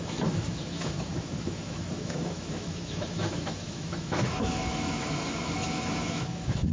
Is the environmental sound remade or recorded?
remade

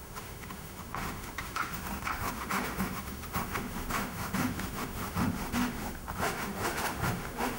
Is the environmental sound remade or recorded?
remade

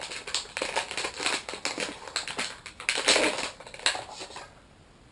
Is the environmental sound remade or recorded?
recorded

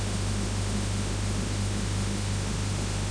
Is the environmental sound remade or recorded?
remade